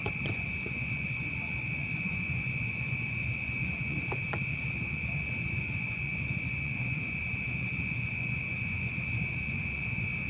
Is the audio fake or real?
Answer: fake